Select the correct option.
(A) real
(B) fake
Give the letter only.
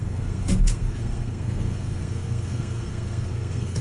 B